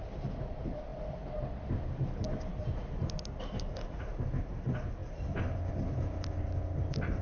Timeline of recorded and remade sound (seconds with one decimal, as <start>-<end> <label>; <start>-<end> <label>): 0.0-5.0 recorded; 5.0-5.7 remade; 5.7-7.2 recorded